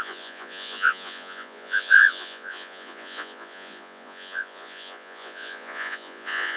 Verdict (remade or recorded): remade